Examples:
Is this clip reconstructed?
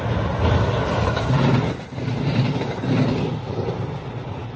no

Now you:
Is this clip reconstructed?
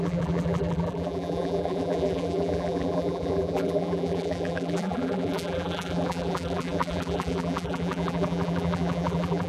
yes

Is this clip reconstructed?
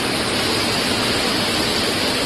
no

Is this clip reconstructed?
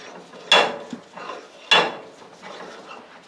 no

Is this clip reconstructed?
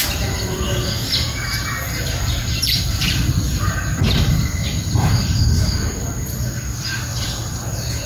yes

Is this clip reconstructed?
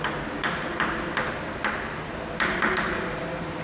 yes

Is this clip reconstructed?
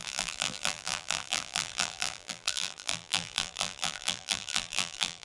yes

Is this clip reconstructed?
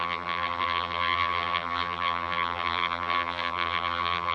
yes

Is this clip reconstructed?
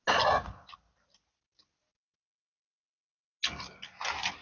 no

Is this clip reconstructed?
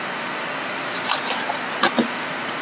no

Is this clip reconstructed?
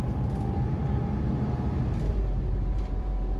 yes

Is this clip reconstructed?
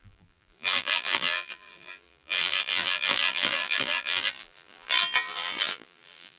yes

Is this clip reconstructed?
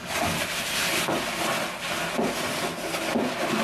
no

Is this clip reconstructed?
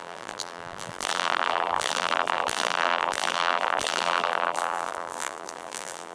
yes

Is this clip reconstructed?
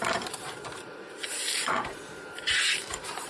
yes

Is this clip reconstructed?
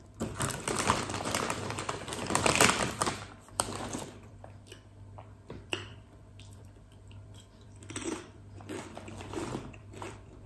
yes